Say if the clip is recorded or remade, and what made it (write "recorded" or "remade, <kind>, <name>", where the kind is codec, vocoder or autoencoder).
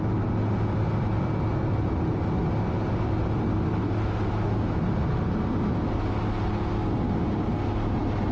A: recorded